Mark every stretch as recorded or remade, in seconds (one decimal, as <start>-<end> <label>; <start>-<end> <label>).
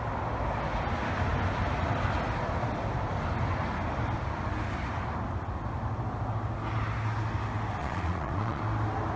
0.0-7.8 recorded; 7.8-8.6 remade; 8.6-9.2 recorded